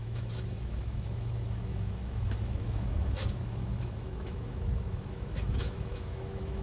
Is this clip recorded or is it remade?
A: remade